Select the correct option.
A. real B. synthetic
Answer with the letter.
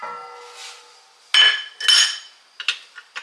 A